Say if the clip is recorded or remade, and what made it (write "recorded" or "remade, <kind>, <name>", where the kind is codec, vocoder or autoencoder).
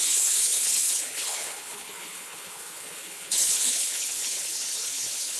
remade, codec, HILCodec